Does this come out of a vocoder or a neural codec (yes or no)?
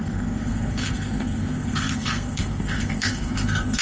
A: yes